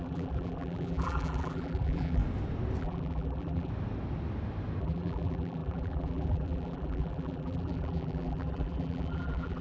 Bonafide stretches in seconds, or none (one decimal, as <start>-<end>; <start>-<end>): 2.2-2.8; 3.7-4.8